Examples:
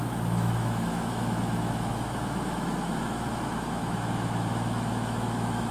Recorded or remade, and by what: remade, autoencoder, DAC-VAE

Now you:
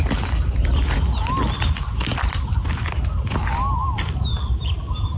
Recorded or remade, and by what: recorded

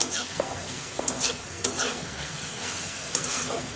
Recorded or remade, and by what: remade, codec, SNAC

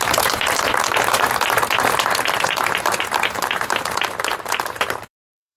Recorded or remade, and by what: remade, vocoder, BigVGAN v2